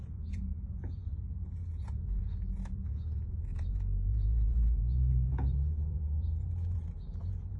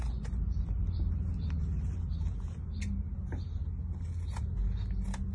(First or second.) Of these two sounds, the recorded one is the second